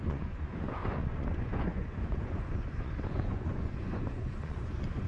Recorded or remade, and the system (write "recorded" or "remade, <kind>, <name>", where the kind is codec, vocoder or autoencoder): remade, vocoder, Vocos